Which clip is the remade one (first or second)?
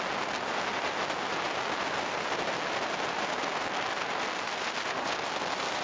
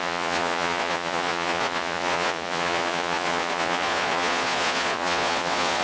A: second